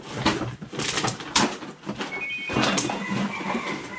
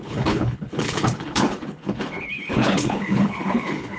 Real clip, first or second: first